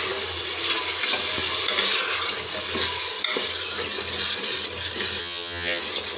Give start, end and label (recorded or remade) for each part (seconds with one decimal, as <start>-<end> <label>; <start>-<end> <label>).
0.0-5.2 recorded; 5.2-5.8 remade; 5.8-6.2 recorded